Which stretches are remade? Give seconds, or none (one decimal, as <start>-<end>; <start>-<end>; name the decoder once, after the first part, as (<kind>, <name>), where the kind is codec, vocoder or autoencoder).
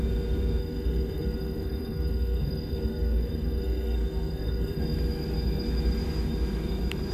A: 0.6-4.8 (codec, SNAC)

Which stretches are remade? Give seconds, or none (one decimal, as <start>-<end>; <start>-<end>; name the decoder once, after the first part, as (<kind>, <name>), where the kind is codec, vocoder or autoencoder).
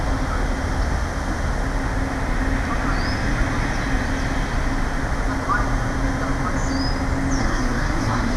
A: 7.4-8.4 (codec, SNAC)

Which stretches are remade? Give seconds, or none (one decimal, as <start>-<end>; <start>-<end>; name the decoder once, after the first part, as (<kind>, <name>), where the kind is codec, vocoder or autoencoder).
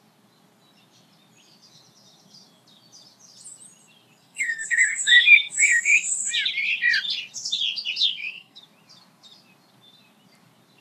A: 4.2-6.3 (codec, SNAC); 8.0-8.6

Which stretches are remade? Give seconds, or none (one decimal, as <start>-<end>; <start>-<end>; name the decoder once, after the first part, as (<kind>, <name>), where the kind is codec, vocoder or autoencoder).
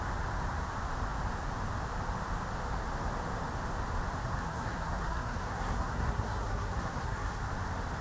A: 4.2-7.4 (codec, SNAC)